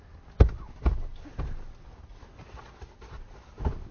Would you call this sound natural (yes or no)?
yes